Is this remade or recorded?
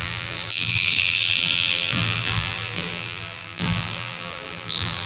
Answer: remade